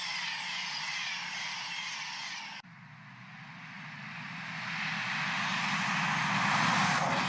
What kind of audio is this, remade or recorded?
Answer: recorded